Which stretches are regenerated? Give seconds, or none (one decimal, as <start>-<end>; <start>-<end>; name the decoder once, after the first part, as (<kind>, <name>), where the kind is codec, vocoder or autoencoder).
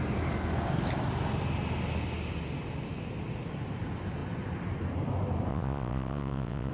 5.5-6.7 (vocoder, WaveNeXt)